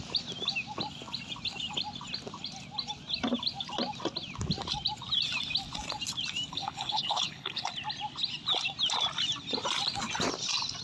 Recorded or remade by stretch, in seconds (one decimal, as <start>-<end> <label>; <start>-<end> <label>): 0.0-6.5 recorded; 6.5-7.7 remade; 7.7-10.8 recorded